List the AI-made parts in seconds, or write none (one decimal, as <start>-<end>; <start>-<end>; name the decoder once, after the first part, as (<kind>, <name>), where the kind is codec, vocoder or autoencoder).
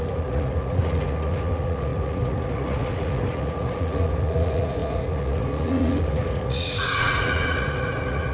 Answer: 0.0-8.3 (vocoder, Vocos)